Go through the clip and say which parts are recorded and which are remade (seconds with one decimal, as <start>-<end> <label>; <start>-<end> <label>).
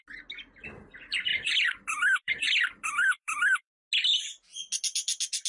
0.0-1.3 recorded; 1.3-3.7 remade; 3.7-5.5 recorded